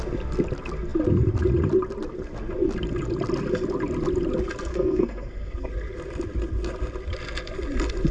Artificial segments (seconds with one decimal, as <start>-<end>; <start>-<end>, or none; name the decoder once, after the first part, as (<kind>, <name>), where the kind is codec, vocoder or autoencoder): 4.7-5.7 (codec, SNAC)